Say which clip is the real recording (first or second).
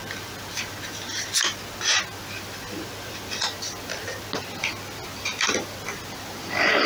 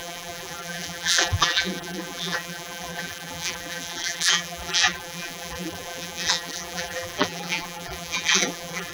first